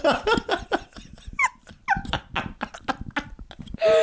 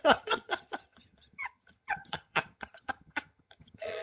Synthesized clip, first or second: second